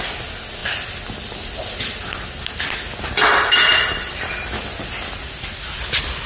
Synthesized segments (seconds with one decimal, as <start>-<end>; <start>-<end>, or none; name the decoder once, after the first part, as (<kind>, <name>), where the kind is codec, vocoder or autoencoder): none